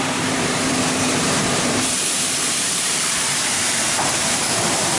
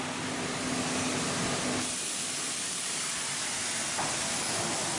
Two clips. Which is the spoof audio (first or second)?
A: first